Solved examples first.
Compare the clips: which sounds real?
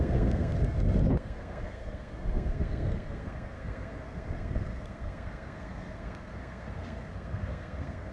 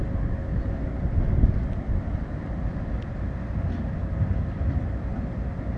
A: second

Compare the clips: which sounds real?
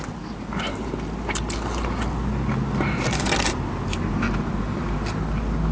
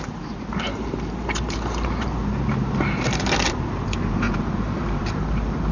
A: first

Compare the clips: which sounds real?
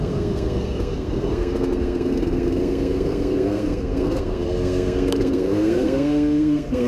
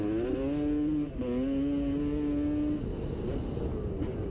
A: second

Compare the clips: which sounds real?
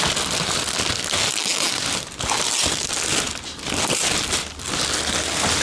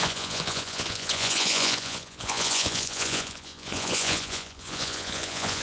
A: first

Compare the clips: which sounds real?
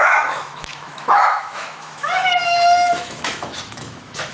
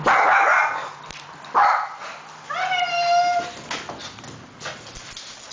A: second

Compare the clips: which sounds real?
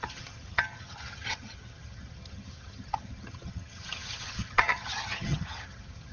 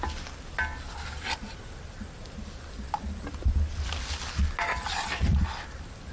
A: second